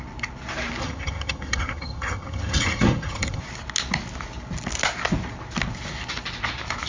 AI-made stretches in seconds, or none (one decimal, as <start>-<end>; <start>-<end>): 0.8-3.4